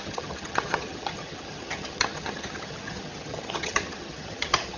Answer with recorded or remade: remade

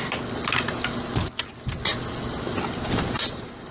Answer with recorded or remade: recorded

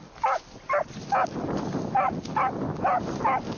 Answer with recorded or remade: recorded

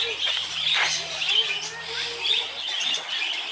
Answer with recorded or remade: recorded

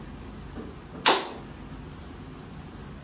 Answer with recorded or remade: recorded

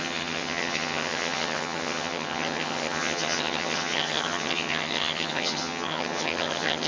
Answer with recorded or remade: remade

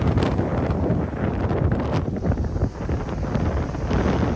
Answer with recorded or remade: recorded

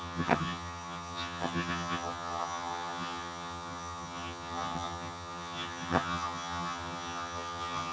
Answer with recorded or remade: remade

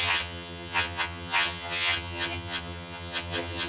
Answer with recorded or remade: remade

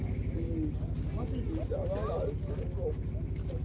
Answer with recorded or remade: recorded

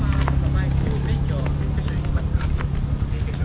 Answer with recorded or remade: recorded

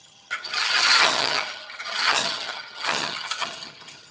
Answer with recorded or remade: remade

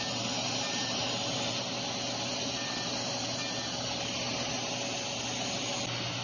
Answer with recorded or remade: recorded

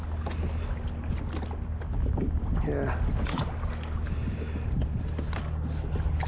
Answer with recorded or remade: recorded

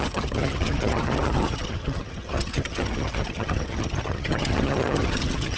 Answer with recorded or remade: remade